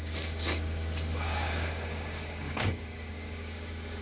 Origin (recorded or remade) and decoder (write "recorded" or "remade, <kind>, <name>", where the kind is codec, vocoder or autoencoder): remade, codec, DAC